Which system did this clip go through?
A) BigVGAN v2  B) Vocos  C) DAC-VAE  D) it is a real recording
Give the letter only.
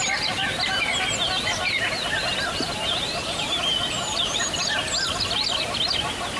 D